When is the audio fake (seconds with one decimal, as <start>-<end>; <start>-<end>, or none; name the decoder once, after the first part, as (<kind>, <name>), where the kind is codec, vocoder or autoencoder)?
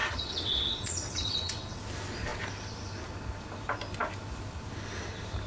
0.0-1.8 (vocoder, WaveNeXt)